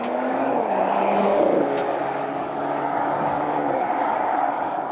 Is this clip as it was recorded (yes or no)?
no